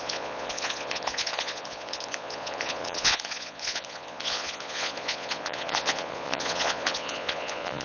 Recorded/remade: remade